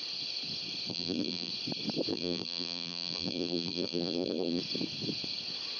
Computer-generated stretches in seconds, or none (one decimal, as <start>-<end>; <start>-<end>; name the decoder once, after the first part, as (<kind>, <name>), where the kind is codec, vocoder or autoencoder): 0.9-1.5 (vocoder, BigVGAN v2); 2.1-4.6